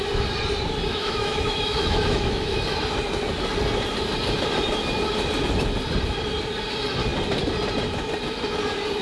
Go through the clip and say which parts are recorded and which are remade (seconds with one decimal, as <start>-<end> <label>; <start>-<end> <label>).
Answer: 0.0-0.9 recorded; 0.9-2.6 remade; 2.6-9.0 recorded